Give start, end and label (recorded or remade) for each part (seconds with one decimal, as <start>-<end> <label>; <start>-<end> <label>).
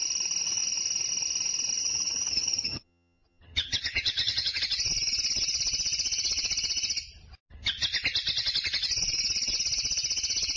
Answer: 0.0-1.8 recorded; 1.8-4.6 remade; 4.6-10.6 recorded